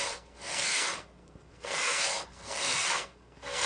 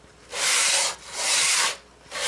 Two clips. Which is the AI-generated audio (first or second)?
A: first